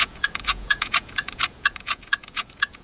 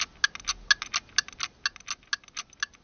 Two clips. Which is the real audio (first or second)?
second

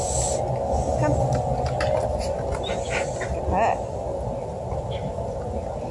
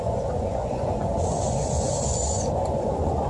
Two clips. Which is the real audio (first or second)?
first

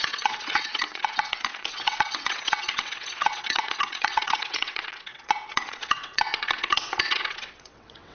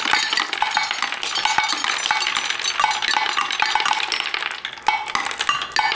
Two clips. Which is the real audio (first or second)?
second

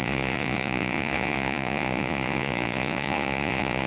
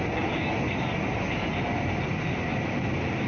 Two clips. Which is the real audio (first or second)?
second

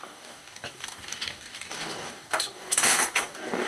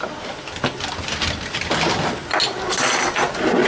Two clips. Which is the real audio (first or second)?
second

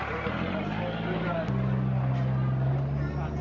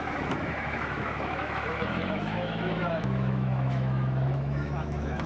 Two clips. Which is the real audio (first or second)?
first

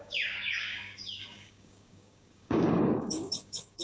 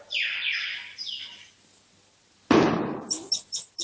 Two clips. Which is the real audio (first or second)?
second